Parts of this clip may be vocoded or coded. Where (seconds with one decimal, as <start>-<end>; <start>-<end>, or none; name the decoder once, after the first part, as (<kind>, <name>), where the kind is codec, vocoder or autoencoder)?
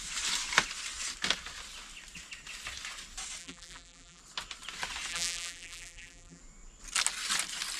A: 3.4-4.2 (vocoder, BigVGAN v2); 5.1-6.4